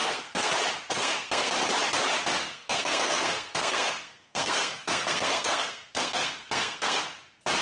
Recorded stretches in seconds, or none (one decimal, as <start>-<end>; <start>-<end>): 0.5-0.9; 1.5-2.4; 7.0-7.6